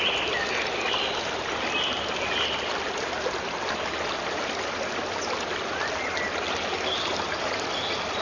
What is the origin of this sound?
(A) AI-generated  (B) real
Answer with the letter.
B